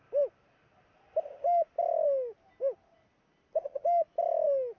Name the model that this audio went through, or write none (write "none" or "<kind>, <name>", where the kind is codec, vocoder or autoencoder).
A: none